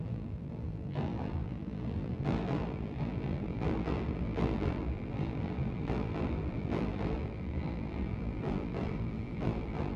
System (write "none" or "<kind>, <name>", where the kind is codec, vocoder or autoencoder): vocoder, BigVGAN v2